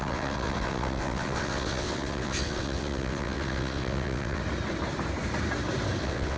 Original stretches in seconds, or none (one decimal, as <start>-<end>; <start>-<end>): 4.4-6.0